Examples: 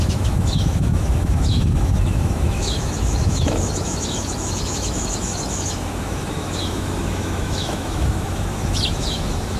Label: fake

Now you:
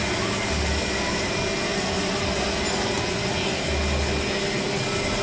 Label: real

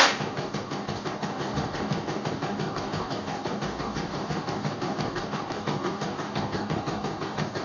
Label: fake